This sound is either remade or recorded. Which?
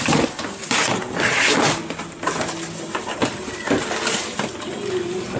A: recorded